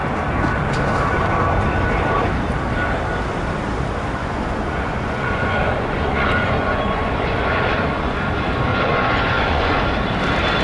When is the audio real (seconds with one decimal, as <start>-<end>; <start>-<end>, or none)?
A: 0.0-4.2; 8.2-8.7; 9.8-10.6